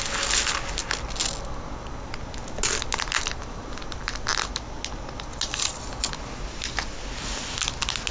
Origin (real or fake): real